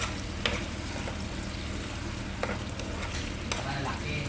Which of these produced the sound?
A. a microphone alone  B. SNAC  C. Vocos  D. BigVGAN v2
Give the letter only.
A